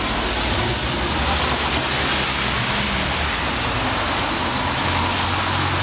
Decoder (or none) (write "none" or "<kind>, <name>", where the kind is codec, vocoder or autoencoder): none